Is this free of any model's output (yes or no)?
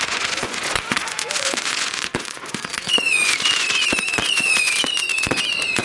no